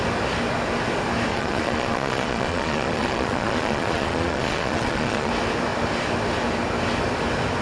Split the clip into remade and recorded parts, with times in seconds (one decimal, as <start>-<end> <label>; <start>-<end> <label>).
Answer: 0.0-1.3 recorded; 1.3-5.3 remade; 5.3-7.6 recorded